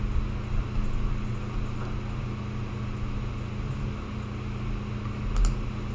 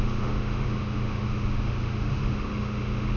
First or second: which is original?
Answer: first